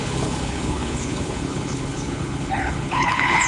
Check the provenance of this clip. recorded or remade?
remade